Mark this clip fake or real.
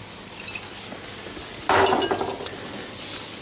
real